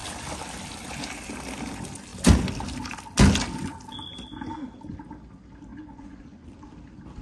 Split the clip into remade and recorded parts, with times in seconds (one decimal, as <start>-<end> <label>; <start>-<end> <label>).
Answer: 0.0-5.7 recorded; 5.7-6.5 remade; 6.5-7.2 recorded